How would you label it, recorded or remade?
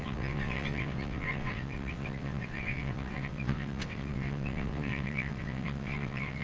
remade